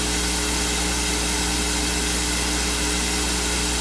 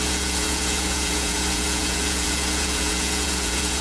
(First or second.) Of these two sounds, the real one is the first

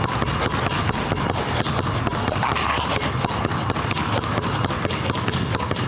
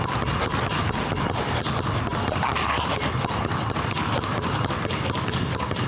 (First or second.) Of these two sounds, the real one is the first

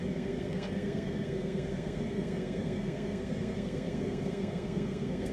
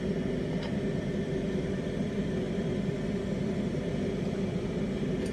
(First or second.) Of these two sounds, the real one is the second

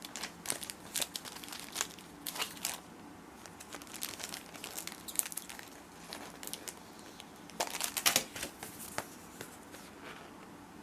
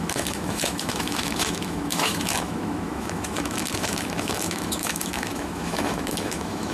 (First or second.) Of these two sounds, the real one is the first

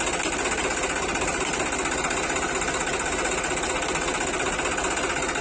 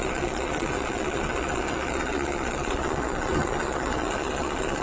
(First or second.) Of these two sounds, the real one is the first